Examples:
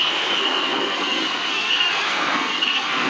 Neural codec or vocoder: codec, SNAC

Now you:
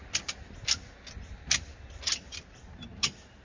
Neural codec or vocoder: none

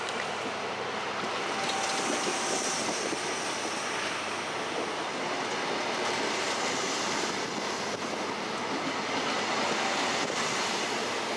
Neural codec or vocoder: none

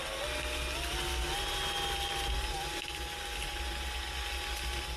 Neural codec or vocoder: none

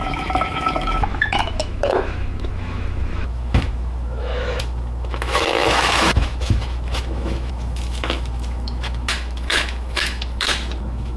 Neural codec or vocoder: autoencoder, DAC-VAE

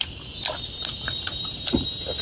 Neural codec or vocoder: none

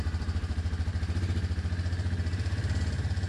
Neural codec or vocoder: vocoder, BigVGAN v2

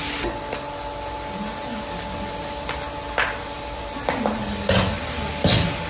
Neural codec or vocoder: none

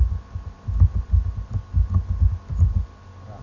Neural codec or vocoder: none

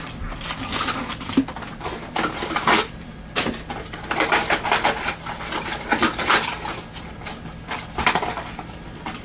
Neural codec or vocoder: none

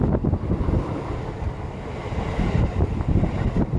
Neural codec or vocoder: none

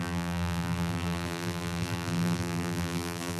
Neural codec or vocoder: vocoder, BigVGAN v2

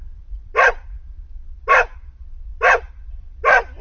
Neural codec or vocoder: none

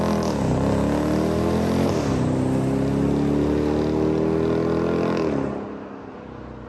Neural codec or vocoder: none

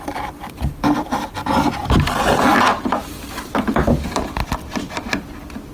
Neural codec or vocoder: none